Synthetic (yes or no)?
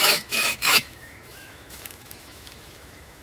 yes